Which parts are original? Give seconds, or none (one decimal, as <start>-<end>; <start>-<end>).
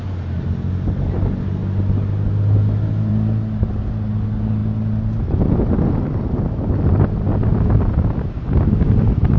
0.0-9.4